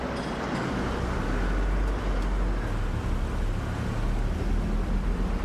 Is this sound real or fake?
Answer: real